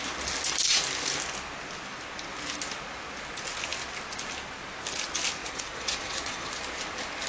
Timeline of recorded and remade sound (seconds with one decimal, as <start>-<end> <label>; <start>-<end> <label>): 0.0-5.4 recorded; 5.4-6.6 remade; 6.6-7.3 recorded